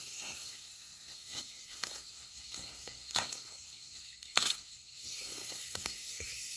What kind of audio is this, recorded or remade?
remade